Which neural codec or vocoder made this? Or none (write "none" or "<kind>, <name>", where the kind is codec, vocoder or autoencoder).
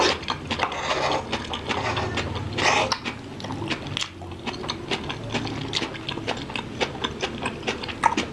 none